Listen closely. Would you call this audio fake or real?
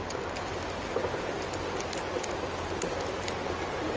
real